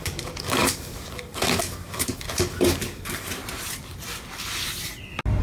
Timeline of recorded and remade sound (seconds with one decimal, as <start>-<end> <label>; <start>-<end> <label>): 0.0-3.4 remade; 3.4-5.4 recorded